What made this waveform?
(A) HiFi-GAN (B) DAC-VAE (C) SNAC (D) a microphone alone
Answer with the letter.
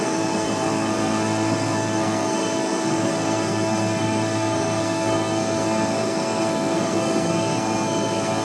C